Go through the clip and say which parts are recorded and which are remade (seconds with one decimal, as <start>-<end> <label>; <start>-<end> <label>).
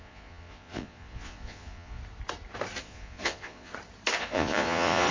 0.0-2.0 remade; 2.0-2.8 recorded; 2.8-3.7 remade; 3.7-4.2 recorded; 4.2-5.1 remade